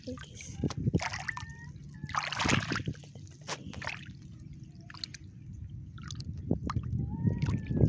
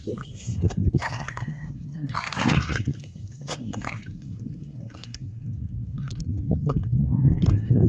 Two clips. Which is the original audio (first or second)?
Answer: first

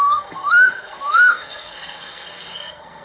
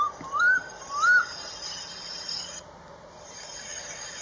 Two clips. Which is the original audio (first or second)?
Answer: second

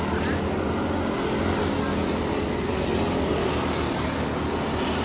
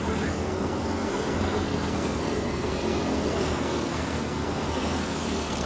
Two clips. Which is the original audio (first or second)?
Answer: first